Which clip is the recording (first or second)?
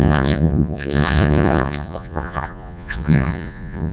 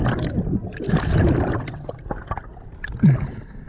second